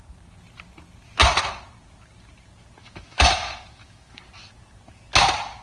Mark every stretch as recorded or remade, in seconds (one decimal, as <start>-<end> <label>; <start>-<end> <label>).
0.0-2.8 recorded; 2.8-4.2 remade; 4.2-5.6 recorded

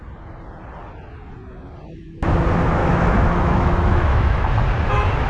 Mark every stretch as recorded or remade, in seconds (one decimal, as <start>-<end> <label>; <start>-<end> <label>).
0.0-2.8 recorded; 2.8-4.4 remade; 4.4-5.3 recorded

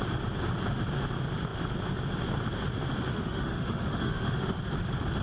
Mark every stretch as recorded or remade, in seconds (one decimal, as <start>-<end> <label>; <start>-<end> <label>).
0.0-3.1 recorded; 3.1-4.6 remade; 4.6-5.2 recorded

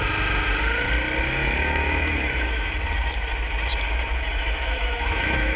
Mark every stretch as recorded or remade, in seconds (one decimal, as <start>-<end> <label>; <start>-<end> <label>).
0.0-1.4 recorded; 1.4-2.7 remade; 2.7-3.7 recorded; 3.7-5.6 remade

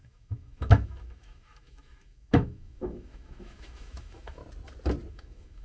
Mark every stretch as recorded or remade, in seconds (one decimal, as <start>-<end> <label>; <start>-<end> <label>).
0.0-4.4 remade; 4.4-5.1 recorded; 5.1-5.6 remade

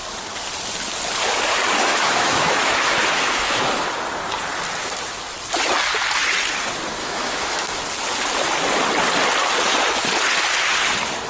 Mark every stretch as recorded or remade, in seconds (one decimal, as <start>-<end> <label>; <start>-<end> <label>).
0.0-1.9 recorded; 1.9-3.6 remade; 3.6-7.0 recorded; 7.0-7.8 remade; 7.8-11.3 recorded